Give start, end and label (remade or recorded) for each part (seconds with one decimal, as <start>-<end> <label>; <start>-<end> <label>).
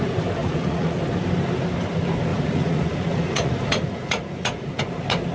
0.0-0.4 recorded; 0.4-1.0 remade; 1.0-2.3 recorded; 2.3-4.8 remade; 4.8-5.3 recorded